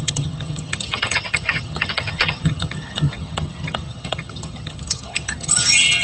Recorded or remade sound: remade